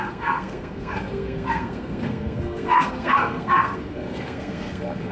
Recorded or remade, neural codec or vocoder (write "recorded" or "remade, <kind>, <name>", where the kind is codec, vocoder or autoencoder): remade, codec, SNAC